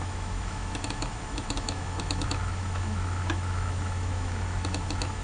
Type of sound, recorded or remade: remade